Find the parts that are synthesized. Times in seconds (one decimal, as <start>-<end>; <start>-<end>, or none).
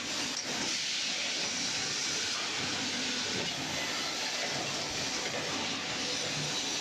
none